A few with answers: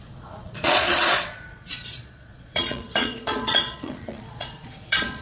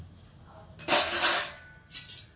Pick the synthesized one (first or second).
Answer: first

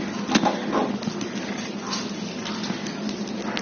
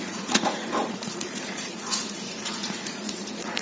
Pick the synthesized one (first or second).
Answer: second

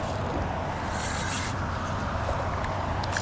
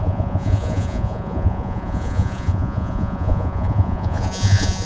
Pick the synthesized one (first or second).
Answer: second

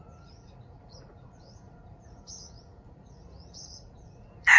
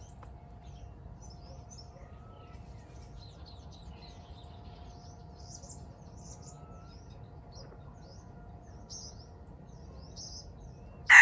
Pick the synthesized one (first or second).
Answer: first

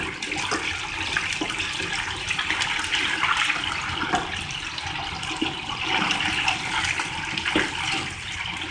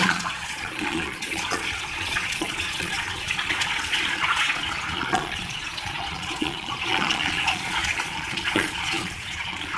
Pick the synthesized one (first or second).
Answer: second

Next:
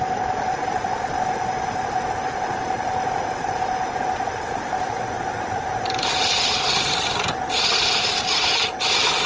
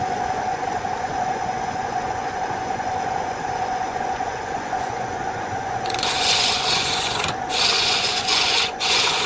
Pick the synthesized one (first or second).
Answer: second